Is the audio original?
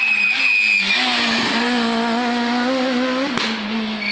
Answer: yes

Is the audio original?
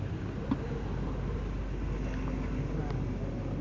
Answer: yes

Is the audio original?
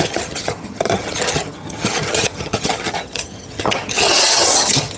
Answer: no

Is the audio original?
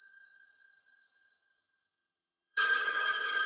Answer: no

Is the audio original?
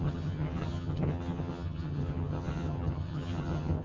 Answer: no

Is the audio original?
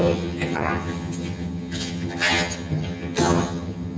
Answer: no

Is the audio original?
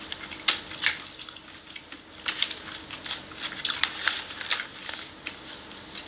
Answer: yes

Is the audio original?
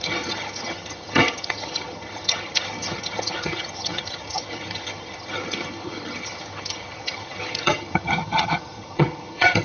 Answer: no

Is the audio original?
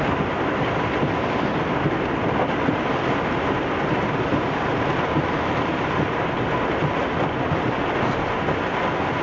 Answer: yes